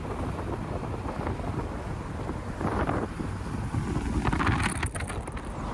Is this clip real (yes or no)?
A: yes